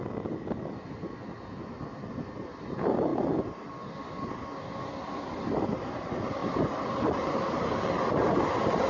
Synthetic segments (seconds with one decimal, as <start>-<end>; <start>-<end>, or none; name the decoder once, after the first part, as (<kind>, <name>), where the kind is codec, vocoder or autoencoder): 0.0-3.1 (vocoder, BigVGAN v2); 4.0-6.4; 8.5-8.9

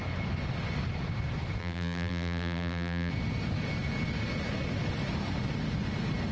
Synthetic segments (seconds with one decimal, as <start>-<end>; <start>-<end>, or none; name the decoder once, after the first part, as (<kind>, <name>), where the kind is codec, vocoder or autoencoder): 1.6-3.1 (vocoder, BigVGAN v2)

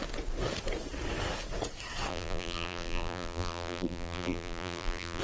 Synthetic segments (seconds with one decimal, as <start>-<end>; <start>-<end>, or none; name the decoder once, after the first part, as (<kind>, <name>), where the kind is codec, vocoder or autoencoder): 2.1-5.2 (vocoder, BigVGAN v2)

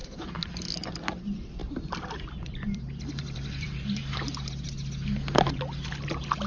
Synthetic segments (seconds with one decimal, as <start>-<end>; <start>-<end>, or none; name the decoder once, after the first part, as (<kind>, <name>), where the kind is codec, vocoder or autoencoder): 0.0-0.9 (vocoder, BigVGAN v2); 1.6-4.1